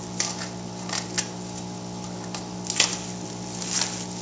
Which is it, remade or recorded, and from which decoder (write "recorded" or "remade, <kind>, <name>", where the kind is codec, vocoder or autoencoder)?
recorded